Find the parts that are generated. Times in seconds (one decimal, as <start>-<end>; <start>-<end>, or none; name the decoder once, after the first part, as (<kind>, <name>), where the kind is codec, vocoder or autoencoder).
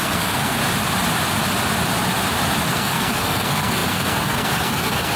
0.0-0.6 (codec, SNAC); 2.7-5.2